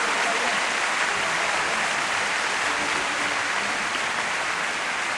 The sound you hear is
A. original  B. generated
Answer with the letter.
A